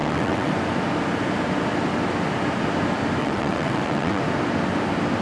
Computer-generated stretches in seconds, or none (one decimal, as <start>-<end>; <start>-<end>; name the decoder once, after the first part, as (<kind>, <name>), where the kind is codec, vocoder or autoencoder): 0.0-0.5 (vocoder, WaveNeXt); 3.2-4.2